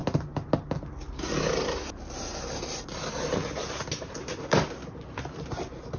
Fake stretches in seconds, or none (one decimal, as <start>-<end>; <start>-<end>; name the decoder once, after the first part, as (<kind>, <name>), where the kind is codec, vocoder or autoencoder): none